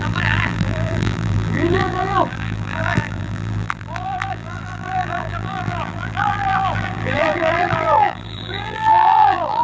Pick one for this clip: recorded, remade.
remade